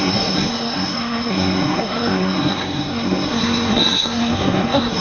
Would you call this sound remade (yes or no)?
yes